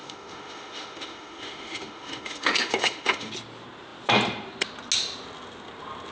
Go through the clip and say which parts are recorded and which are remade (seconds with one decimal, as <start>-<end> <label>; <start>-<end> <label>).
0.0-3.3 remade; 3.3-6.1 recorded